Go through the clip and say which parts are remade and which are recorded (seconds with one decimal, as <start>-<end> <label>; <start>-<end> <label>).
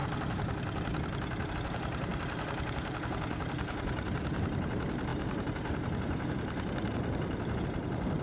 0.0-1.5 recorded; 1.5-8.2 remade